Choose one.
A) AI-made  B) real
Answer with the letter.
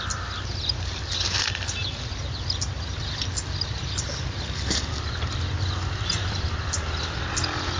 B